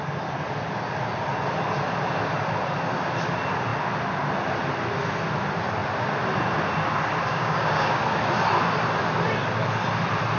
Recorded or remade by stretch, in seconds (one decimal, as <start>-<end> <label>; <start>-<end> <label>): 0.0-7.3 recorded; 7.3-8.0 remade; 8.0-10.4 recorded